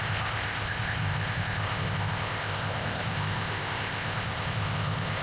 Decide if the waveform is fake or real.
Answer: fake